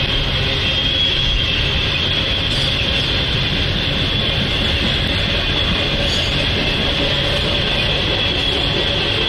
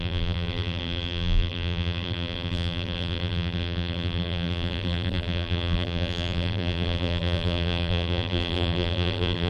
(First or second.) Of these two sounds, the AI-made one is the second